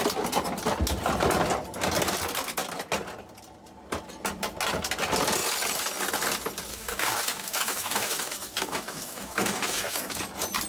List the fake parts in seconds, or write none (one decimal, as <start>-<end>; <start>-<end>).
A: 6.7-10.2